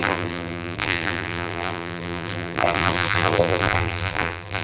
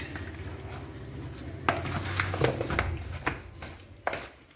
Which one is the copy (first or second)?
first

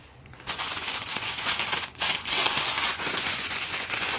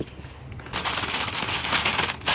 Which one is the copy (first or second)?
first